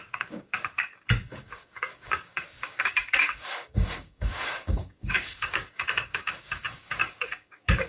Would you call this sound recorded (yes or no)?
no